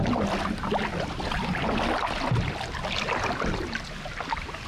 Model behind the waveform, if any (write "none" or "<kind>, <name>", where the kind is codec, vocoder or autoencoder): none